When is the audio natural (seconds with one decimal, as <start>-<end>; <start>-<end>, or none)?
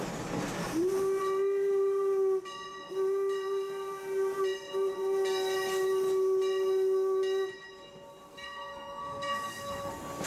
0.0-8.3; 9.9-10.3